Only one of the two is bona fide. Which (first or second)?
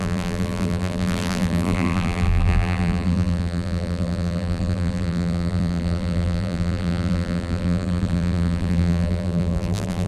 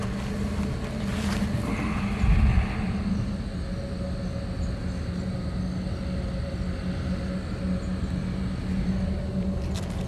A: second